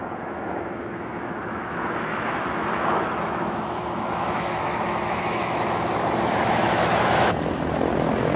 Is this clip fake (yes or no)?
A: yes